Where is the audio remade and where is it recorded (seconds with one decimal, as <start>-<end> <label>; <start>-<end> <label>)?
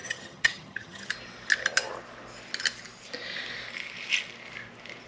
0.0-1.1 remade; 1.1-5.1 recorded